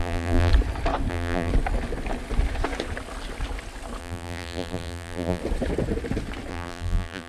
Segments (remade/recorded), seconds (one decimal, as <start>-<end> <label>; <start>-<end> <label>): 0.0-0.5 remade; 0.5-1.1 recorded; 1.1-1.5 remade; 1.5-4.0 recorded; 4.0-5.4 remade; 5.4-6.5 recorded; 6.5-7.3 remade